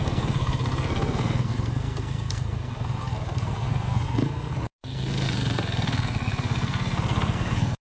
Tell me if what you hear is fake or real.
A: fake